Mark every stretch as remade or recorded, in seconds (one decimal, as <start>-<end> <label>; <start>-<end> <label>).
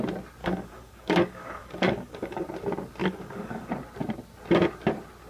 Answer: 0.0-0.4 recorded; 0.4-2.4 remade; 2.4-3.0 recorded; 3.0-3.7 remade; 3.7-5.3 recorded